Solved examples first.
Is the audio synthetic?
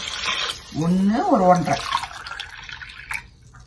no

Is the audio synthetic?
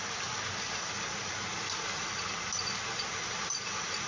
no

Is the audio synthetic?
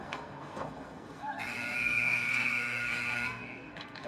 yes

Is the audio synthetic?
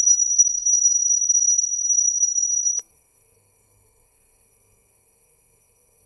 yes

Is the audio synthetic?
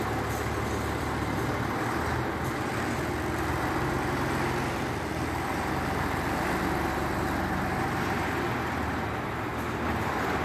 no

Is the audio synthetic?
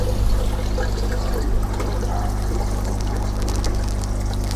no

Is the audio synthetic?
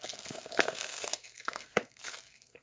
yes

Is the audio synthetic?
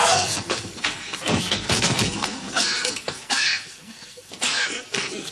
yes